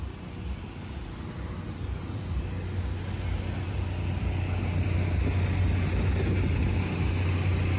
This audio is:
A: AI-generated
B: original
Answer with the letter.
B